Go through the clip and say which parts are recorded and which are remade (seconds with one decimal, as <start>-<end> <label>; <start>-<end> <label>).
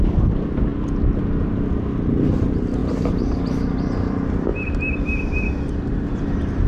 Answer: 0.0-0.7 remade; 0.7-1.2 recorded; 1.2-2.8 remade; 2.8-3.4 recorded; 3.4-6.7 remade